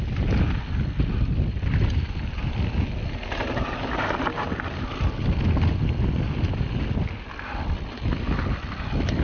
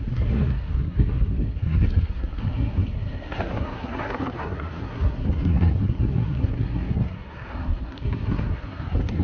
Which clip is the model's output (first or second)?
second